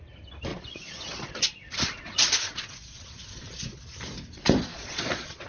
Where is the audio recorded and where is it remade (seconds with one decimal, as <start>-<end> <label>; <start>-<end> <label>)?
0.0-0.5 recorded; 0.5-3.8 remade; 3.8-4.7 recorded; 4.7-5.5 remade